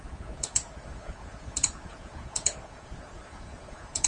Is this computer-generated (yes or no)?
yes